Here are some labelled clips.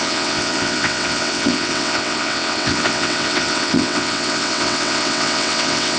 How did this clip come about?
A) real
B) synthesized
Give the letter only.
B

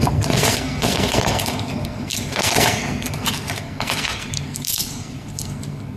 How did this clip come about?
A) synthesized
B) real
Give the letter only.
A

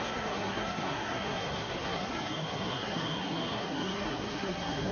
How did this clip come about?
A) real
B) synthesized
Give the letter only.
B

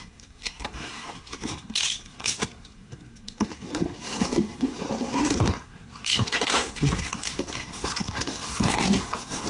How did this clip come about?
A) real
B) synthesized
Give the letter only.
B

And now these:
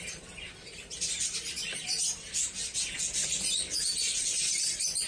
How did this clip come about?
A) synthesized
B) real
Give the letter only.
B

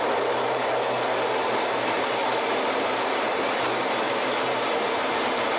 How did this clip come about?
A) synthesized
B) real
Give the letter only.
B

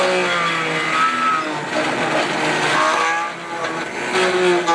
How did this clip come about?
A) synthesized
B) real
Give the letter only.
B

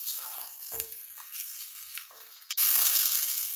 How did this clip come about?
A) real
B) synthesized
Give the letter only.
B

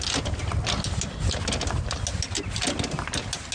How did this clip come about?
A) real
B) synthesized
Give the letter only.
A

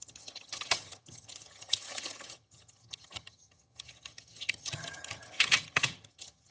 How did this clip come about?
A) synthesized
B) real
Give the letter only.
A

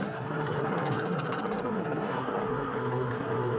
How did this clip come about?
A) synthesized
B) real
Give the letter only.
A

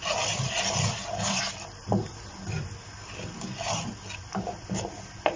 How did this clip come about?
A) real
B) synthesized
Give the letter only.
A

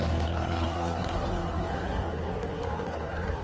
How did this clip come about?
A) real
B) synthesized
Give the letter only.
B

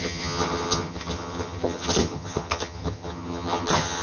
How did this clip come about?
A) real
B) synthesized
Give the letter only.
B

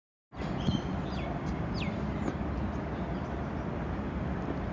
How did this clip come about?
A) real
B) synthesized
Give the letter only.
A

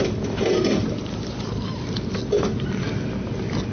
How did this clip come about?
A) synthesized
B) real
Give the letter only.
B